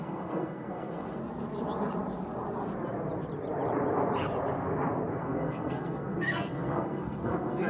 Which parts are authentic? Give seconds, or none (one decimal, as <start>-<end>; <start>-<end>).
1.2-5.1